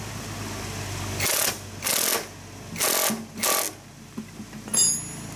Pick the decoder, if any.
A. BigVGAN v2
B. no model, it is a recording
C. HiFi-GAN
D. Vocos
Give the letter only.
B